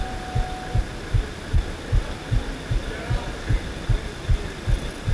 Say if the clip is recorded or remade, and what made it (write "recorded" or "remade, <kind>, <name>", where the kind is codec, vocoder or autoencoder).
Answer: recorded